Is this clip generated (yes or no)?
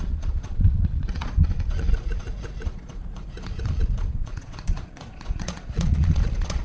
yes